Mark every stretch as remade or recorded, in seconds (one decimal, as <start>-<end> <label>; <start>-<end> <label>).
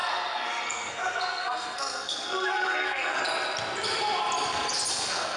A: 0.0-3.2 remade; 3.2-4.9 recorded; 4.9-5.4 remade